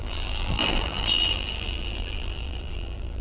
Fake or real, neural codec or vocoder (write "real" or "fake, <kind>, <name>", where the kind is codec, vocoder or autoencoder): fake, vocoder, BigVGAN v2